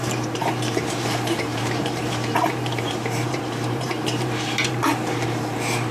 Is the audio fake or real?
fake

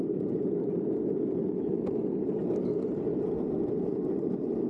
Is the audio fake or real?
real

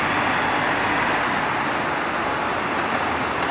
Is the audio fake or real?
real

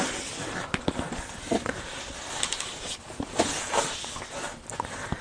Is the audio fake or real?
real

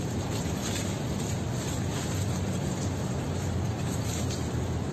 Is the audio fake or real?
fake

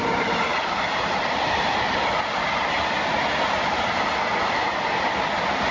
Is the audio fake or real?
real